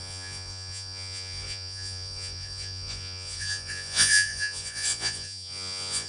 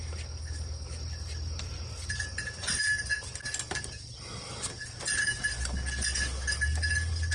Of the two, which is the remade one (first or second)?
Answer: first